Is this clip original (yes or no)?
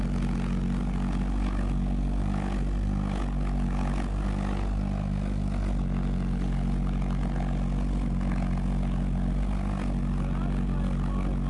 yes